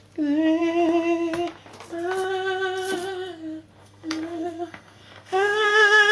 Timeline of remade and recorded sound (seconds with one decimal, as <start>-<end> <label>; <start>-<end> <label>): 0.0-3.8 recorded; 3.8-6.1 remade